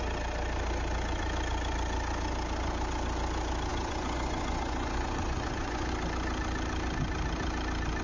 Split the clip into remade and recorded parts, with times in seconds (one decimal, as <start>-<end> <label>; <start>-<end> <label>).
0.0-3.7 recorded; 3.7-5.9 remade; 5.9-8.0 recorded